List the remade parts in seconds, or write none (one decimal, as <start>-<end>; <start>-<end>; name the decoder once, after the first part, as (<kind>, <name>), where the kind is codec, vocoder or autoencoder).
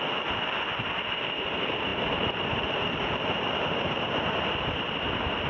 none